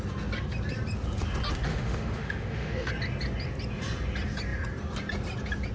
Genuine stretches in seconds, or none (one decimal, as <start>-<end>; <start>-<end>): 0.0-1.7; 2.9-5.7

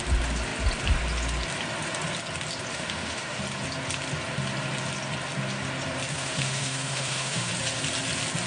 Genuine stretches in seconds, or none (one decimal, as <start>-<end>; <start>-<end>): 0.0-2.7; 3.4-6.1; 7.5-8.5

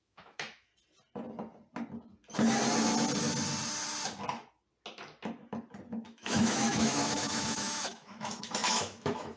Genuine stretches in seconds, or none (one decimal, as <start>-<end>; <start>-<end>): 0.7-5.9

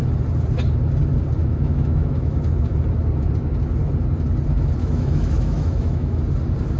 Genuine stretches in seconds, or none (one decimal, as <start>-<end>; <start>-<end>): 0.0-1.4; 2.8-4.8; 6.2-6.8

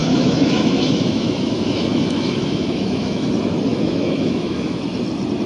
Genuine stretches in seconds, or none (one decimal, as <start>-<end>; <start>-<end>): 3.3-3.7; 4.8-5.5

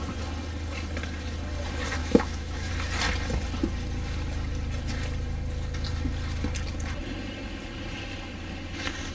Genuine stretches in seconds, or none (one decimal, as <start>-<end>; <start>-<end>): 0.0-2.0; 2.7-9.1